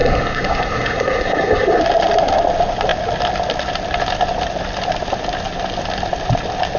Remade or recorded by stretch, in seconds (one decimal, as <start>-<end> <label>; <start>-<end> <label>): 0.0-1.8 remade; 1.8-6.8 recorded